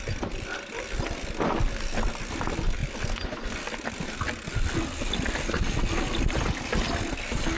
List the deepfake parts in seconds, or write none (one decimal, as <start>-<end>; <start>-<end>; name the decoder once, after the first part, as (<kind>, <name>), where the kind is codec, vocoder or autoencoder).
none